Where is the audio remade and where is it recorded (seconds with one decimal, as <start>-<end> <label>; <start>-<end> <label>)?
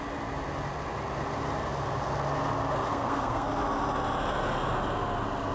0.0-2.9 recorded; 2.9-3.5 remade; 3.5-5.5 recorded